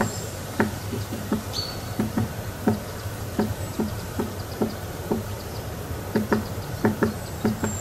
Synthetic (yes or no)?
yes